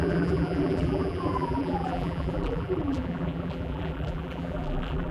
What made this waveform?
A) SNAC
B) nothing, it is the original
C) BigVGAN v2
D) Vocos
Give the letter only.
C